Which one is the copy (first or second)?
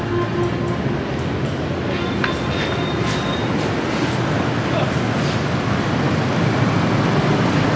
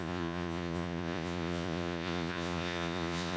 second